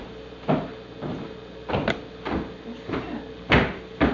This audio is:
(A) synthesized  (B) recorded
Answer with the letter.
B